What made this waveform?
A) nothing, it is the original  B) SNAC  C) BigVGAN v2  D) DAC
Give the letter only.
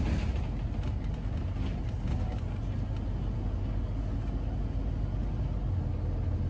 A